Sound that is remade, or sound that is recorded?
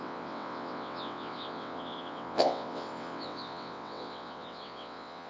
remade